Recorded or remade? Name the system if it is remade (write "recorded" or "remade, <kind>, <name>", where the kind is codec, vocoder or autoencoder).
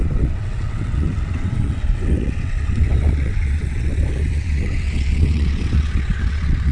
remade, vocoder, WaveNeXt